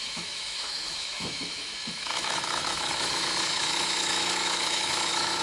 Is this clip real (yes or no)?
no